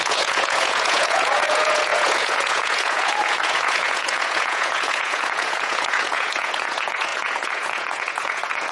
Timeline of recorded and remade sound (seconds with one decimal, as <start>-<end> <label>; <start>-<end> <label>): 0.0-8.7 remade